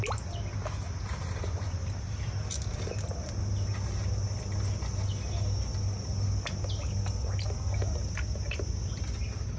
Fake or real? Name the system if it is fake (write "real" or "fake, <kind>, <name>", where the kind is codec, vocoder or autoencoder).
real